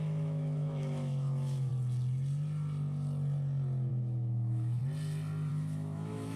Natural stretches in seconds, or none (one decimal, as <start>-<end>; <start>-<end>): 1.7-3.9; 4.8-5.5